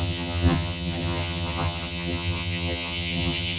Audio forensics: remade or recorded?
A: remade